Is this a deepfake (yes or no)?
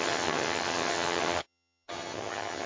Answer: yes